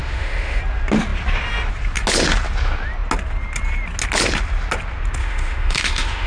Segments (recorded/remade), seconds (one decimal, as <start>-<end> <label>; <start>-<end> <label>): 0.0-0.6 remade; 0.6-5.2 recorded; 5.2-6.3 remade